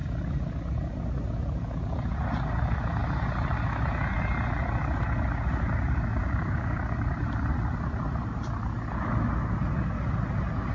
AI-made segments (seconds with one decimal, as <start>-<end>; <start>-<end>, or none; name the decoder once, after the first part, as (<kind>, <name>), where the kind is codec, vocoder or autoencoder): 6.2-6.8 (codec, DAC)